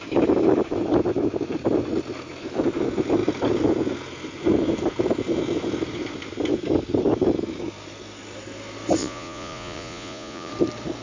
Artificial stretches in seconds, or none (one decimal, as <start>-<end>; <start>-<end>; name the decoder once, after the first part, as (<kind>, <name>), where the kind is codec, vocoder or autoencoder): 9.0-10.5 (vocoder, Vocos)